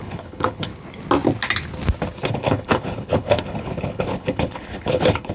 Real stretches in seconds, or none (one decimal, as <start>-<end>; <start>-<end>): 0.7-2.3